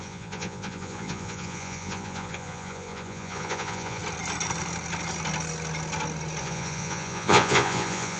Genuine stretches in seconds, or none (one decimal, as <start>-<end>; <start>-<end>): 4.0-6.4